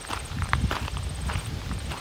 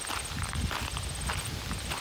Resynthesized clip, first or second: first